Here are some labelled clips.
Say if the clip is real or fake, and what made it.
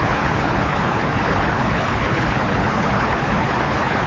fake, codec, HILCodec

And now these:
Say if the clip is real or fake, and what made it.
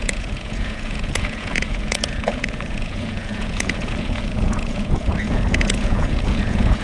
fake, vocoder, Vocos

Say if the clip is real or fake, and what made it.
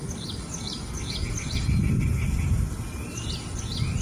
real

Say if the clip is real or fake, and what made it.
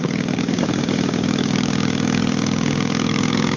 fake, codec, DAC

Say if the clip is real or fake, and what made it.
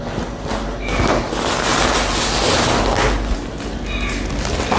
real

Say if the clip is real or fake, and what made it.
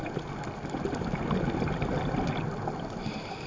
real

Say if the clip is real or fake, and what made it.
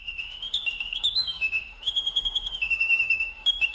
fake, autoencoder, DAC-VAE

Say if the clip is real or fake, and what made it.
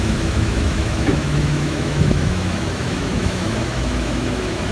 fake, autoencoder, DAC-VAE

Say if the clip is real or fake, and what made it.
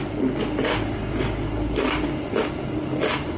real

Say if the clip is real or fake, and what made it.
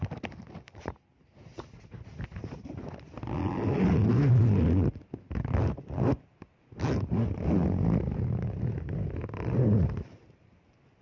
real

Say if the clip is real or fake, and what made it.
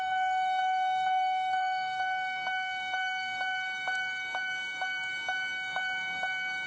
fake, codec, DAC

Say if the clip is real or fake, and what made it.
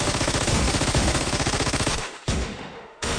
fake, autoencoder, DAC-VAE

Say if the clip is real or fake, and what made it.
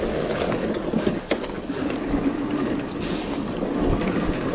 fake, codec, DAC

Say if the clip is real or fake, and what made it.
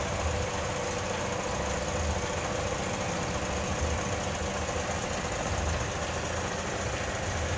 real